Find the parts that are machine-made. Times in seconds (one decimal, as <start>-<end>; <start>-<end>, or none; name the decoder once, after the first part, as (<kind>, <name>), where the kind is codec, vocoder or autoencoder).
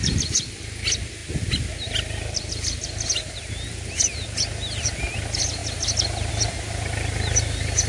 none